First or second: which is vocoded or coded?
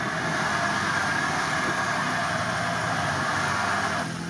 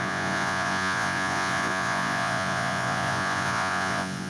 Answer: second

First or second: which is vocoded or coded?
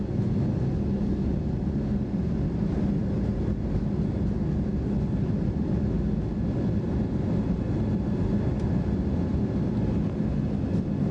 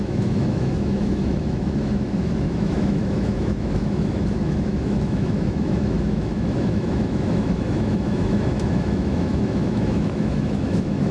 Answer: second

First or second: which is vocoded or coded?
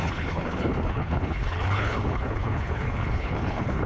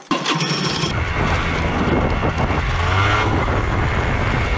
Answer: first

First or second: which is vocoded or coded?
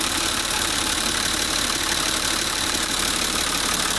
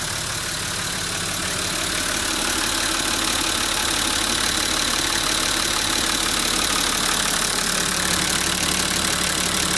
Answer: first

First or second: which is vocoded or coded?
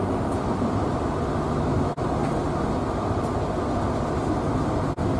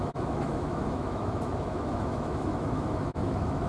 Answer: second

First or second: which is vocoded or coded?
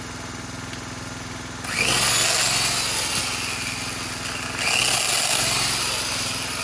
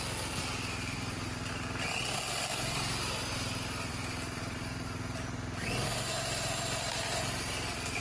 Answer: second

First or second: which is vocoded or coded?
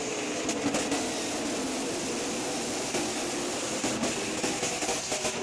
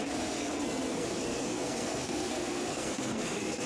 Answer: second